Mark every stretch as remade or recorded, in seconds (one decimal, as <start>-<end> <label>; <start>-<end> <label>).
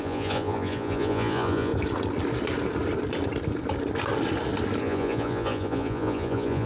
0.0-1.7 remade; 1.7-4.8 recorded; 4.8-6.7 remade